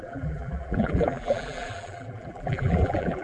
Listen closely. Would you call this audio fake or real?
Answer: fake